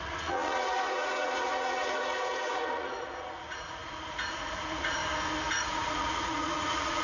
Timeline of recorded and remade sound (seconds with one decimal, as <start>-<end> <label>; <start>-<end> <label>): 0.0-5.0 remade; 5.0-5.5 recorded; 5.5-7.0 remade